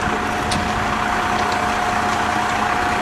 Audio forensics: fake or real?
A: real